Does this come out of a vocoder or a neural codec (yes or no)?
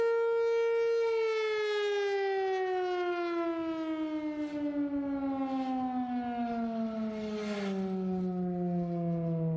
no